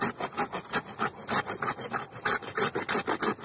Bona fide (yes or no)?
yes